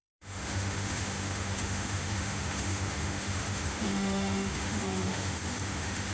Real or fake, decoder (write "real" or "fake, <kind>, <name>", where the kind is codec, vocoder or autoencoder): fake, autoencoder, DAC-VAE